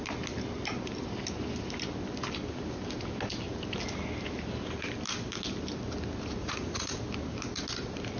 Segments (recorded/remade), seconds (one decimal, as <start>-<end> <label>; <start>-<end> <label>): 0.0-6.4 recorded; 6.4-7.0 remade; 7.0-8.2 recorded